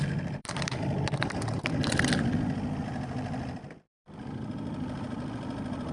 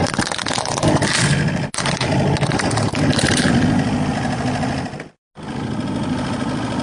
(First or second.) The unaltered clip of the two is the second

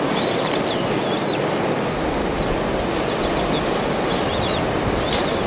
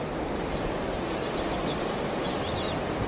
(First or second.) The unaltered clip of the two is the first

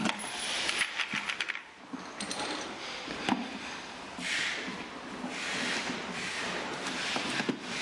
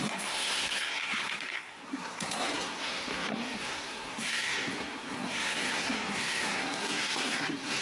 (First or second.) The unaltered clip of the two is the first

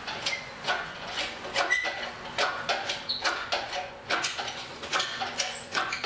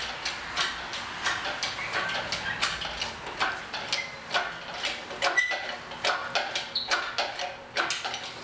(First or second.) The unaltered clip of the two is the second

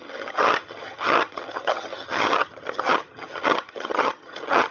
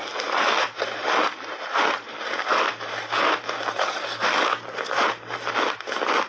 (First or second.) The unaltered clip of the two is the second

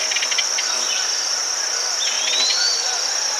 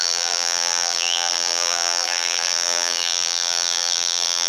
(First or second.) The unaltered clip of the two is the first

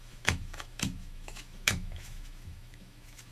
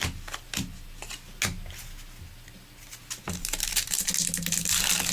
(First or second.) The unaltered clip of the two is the second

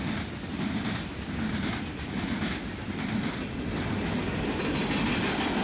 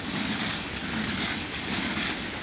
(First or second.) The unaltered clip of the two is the first